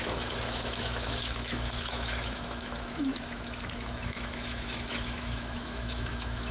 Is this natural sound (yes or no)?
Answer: no